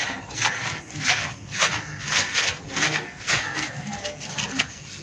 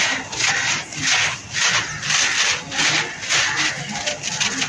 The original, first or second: second